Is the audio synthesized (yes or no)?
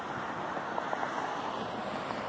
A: no